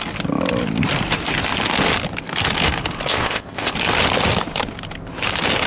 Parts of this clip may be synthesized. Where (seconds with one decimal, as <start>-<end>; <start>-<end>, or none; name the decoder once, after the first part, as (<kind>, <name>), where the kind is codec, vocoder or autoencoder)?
3.1-3.7 (codec, ZipCodec)